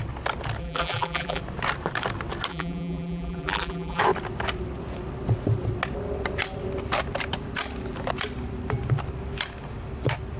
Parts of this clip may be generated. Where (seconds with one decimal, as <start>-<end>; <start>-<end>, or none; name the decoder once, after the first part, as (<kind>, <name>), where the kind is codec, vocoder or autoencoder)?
0.6-1.4 (vocoder, BigVGAN v2); 2.5-4.0